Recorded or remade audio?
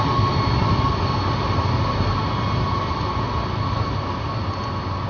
recorded